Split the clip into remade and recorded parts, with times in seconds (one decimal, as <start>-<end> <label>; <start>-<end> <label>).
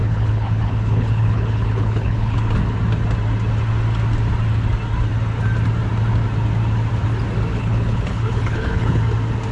0.0-2.5 remade; 2.5-7.5 recorded; 7.5-9.0 remade; 9.0-9.5 recorded